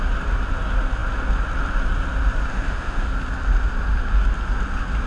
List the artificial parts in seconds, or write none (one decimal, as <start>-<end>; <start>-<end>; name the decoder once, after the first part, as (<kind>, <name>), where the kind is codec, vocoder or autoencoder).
2.5-3.1 (autoencoder, DAC-VAE)